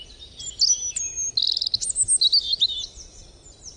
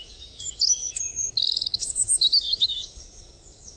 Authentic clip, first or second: first